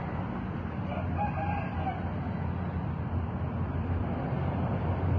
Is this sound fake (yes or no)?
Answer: no